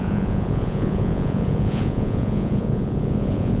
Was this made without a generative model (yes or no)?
no